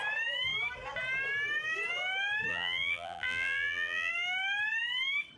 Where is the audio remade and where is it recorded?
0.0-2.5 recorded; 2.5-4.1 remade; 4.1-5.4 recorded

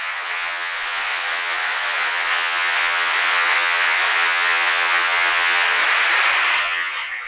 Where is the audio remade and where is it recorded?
0.0-5.8 remade; 5.8-6.6 recorded; 6.6-7.3 remade

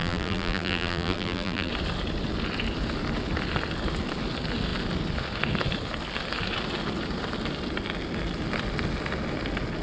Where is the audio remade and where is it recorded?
0.0-1.7 remade; 1.7-9.8 recorded

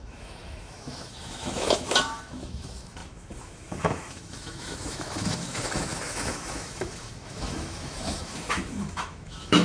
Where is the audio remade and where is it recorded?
0.0-9.6 remade

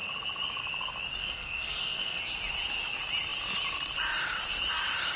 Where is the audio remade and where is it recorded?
0.0-1.2 recorded; 1.2-2.2 remade; 2.2-5.2 recorded

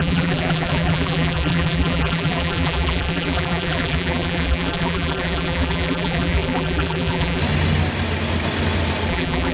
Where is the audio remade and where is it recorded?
0.0-7.4 remade; 7.4-9.1 recorded; 9.1-9.5 remade